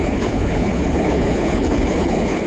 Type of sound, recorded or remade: remade